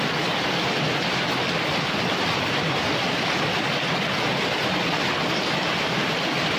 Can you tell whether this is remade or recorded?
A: remade